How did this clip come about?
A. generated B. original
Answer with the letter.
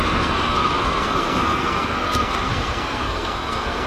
A